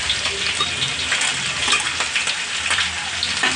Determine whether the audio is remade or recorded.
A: recorded